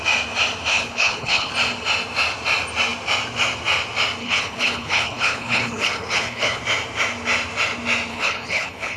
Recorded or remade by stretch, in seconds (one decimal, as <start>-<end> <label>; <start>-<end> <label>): 0.0-0.7 recorded; 0.7-1.5 remade; 1.5-4.2 recorded; 4.2-6.6 remade; 6.6-8.1 recorded; 8.1-9.0 remade